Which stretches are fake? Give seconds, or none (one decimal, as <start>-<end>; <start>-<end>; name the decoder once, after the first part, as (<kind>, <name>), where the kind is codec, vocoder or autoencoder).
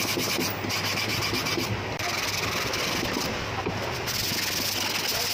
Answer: 1.1-3.4 (vocoder, BigVGAN v2)